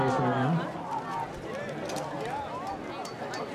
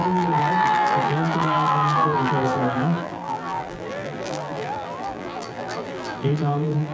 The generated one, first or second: second